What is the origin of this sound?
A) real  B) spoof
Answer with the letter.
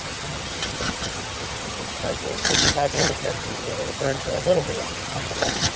B